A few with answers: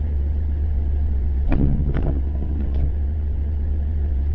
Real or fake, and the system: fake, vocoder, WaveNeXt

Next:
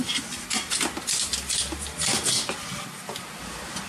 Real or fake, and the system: real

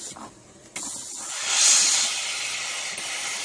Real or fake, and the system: real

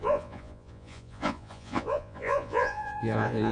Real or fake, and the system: fake, vocoder, Vocos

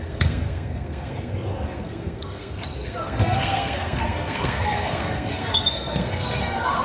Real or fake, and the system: fake, codec, SNAC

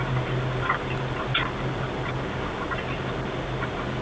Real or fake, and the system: real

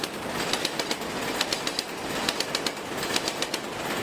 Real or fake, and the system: real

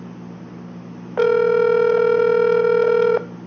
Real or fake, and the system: real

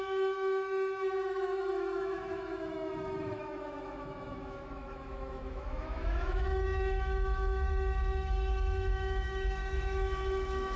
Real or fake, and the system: fake, autoencoder, DAC-VAE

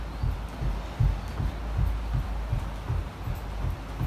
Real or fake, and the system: real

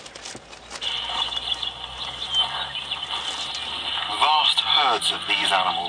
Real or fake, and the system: real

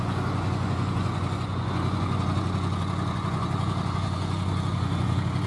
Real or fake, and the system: fake, vocoder, Vocos